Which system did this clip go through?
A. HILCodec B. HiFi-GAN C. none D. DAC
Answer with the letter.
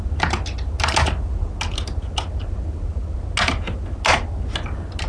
C